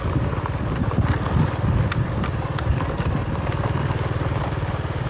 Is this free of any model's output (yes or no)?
yes